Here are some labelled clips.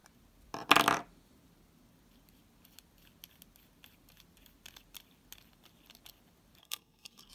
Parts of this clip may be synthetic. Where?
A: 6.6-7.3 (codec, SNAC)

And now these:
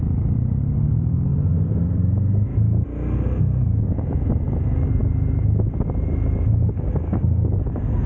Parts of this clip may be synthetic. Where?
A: none

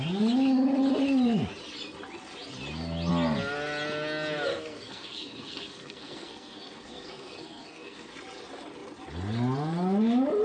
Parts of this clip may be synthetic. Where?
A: 4.5-8.1 (codec, SNAC)

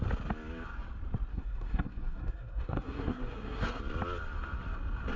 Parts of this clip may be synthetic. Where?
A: 1.3-3.8 (codec, SNAC)

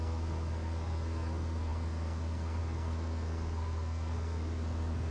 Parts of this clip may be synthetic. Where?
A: 0.0-5.1 (codec, SNAC)

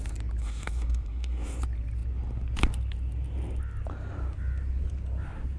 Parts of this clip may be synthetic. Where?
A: 0.4-1.6 (codec, SNAC)

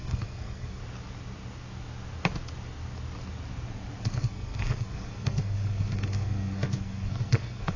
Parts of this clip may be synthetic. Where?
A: 0.0-0.8 (codec, SNAC); 4.0-7.8